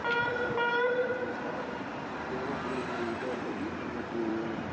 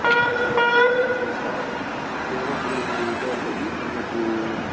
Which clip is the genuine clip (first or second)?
second